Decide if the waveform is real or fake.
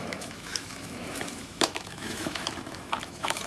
fake